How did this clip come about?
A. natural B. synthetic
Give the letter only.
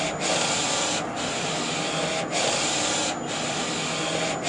A